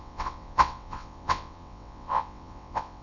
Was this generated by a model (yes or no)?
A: yes